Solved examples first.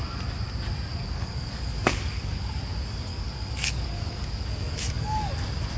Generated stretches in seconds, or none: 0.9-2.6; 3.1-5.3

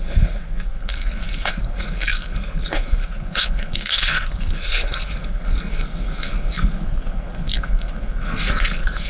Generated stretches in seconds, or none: 0.0-9.1

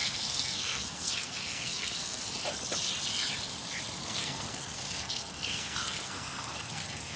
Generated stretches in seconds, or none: 0.0-2.2; 4.0-7.2

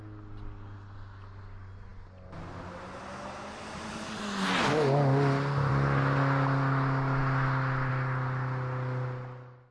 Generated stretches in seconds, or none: none

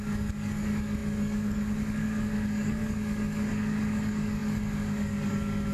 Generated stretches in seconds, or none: 0.0-5.7